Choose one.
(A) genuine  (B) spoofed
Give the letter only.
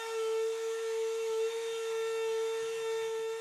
B